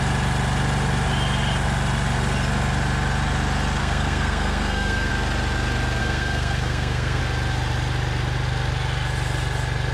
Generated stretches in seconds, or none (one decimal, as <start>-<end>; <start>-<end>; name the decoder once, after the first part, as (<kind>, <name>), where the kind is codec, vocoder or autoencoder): 3.8-5.1 (codec, SNAC); 6.0-7.2